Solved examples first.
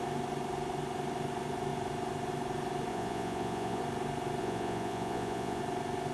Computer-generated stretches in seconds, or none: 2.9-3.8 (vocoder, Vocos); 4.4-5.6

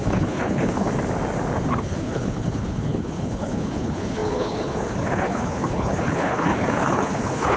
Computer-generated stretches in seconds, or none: 0.0-0.9 (codec, HILCodec); 1.8-7.6

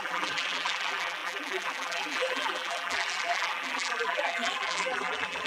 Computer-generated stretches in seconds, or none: 0.0-5.5 (vocoder, BigVGAN v2)

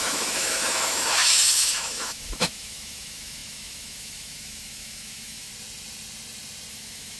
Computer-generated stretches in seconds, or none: 0.0-5.5 (autoencoder, DAC-VAE); 6.7-7.2

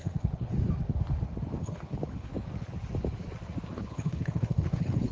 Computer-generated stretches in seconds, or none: 0.0-0.5 (codec, HILCodec); 1.6-2.3; 3.7-5.1

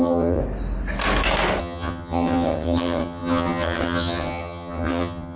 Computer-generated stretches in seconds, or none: 0.0-0.4 (vocoder, HiFi-GAN); 1.6-5.4